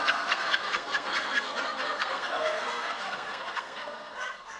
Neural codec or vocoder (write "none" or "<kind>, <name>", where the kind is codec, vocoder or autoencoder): codec, SNAC